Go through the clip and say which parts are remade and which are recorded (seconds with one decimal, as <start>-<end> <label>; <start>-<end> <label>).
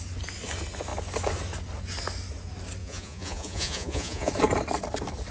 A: 0.0-2.8 recorded; 2.8-4.3 remade; 4.3-5.3 recorded